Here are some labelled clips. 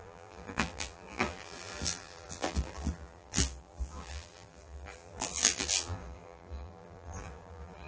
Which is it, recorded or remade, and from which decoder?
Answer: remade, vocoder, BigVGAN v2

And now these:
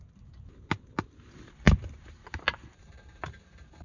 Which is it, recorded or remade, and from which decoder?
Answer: recorded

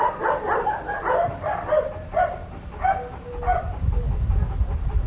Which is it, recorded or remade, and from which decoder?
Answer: remade, vocoder, BigVGAN v2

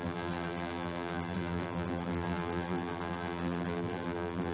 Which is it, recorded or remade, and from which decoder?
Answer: remade, vocoder, BigVGAN v2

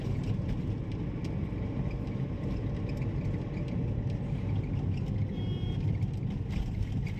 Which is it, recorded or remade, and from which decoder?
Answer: recorded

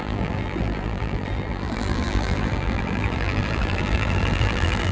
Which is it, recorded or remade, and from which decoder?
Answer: remade, vocoder, BigVGAN v2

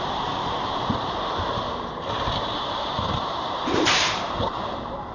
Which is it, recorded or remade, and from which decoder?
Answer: remade, vocoder, BigVGAN v2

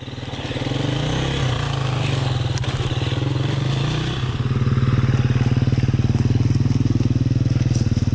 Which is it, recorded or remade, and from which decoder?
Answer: recorded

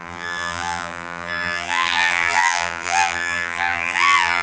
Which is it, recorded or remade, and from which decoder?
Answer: remade, vocoder, BigVGAN v2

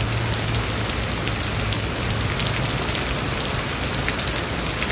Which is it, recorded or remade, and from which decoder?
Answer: recorded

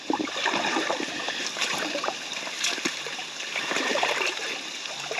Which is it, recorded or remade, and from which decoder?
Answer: remade, vocoder, BigVGAN v2